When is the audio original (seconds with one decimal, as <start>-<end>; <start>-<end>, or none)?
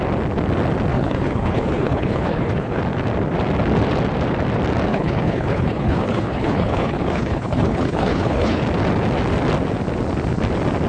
0.0-0.9; 2.8-4.9; 8.6-10.9